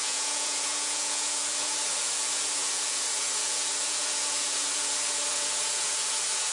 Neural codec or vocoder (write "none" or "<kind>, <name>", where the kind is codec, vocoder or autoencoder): vocoder, Vocos